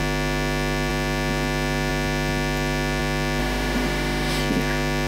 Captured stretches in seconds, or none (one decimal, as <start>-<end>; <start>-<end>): 0.0-3.4; 4.4-5.1